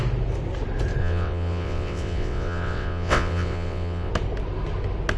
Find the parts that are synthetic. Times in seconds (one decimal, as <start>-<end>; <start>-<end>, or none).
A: 1.0-4.1